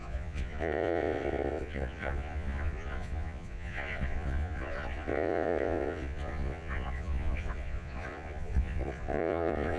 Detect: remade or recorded remade